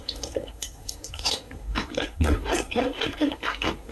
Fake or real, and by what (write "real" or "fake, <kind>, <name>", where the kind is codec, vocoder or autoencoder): fake, codec, SNAC